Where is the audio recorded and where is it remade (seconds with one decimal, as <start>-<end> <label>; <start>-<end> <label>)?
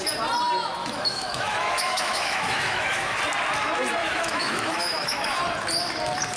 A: 0.0-0.8 recorded; 0.8-3.2 remade; 3.2-4.0 recorded; 4.0-5.4 remade; 5.4-6.4 recorded